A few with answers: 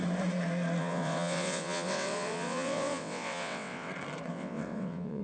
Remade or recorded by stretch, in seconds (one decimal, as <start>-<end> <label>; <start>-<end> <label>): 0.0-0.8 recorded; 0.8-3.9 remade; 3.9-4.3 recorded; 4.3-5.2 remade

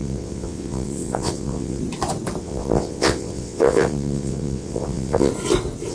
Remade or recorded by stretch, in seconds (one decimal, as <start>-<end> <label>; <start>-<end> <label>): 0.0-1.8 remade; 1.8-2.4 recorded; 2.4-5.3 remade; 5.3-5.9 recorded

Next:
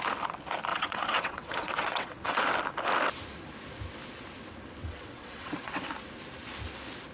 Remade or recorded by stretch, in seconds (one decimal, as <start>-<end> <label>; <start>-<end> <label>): 0.0-0.7 recorded; 0.7-2.4 remade; 2.4-4.8 recorded; 4.8-5.8 remade; 5.8-7.1 recorded